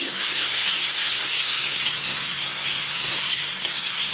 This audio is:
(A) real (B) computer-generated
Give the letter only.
B